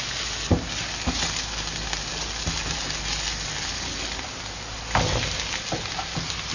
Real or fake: real